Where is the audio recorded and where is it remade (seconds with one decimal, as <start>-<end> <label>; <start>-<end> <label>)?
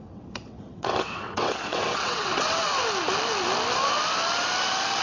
0.0-2.7 remade; 2.7-5.0 recorded